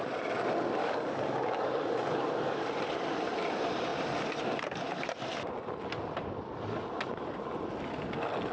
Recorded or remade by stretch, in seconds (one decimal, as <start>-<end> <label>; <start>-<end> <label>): 0.0-0.8 recorded; 0.8-2.7 remade; 2.7-8.5 recorded